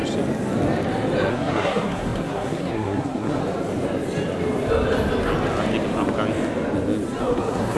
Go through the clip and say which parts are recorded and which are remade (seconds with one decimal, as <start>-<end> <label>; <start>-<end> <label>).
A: 0.0-1.3 recorded; 1.3-3.4 remade; 3.4-7.2 recorded; 7.2-7.8 remade